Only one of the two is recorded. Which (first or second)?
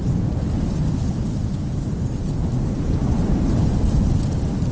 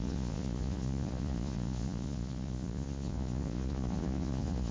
first